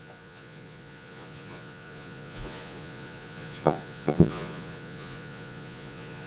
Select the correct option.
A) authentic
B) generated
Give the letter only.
B